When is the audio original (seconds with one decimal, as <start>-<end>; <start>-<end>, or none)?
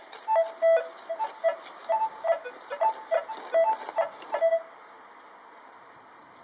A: 0.0-1.8; 2.7-6.4